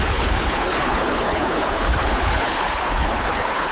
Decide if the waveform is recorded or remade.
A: remade